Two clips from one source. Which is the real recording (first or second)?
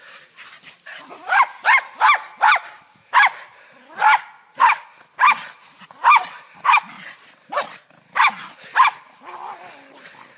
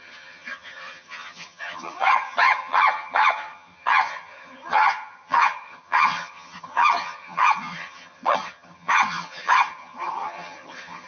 first